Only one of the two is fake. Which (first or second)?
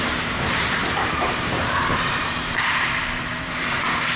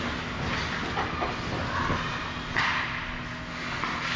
first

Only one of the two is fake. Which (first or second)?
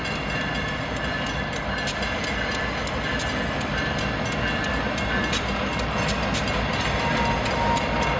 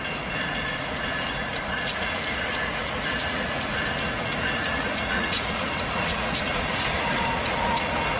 second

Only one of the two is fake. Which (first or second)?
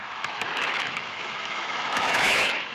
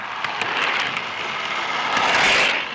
first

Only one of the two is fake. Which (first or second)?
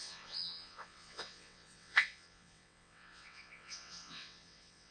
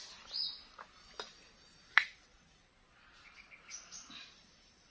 first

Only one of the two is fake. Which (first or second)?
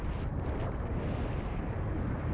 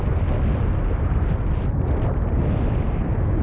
first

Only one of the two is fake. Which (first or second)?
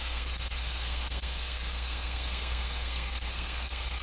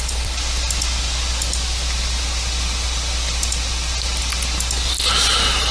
first